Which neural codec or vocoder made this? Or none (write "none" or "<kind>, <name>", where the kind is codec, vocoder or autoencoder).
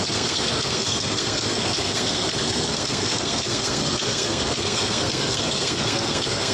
codec, SNAC